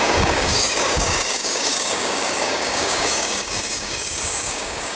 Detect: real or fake fake